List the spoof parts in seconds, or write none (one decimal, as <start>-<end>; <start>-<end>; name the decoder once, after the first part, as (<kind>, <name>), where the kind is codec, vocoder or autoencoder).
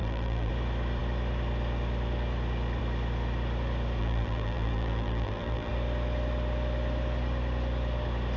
0.0-0.5 (vocoder, BigVGAN v2); 4.0-5.7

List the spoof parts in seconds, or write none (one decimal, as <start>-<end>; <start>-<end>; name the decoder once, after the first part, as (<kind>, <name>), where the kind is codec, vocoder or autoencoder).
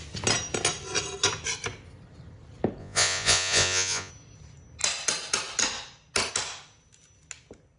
2.8-4.1 (vocoder, Vocos)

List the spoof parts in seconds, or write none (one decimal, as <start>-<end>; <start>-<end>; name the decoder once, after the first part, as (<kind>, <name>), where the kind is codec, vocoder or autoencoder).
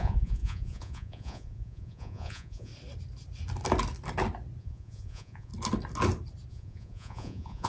0.0-2.7 (vocoder, Vocos); 4.6-5.5; 6.5-7.7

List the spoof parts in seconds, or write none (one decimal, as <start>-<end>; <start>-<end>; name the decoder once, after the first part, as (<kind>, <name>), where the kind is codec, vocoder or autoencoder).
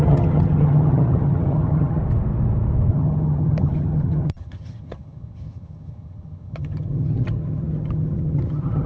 0.0-2.0 (vocoder, HiFi-GAN); 2.9-8.9